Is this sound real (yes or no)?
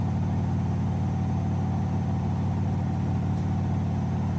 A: yes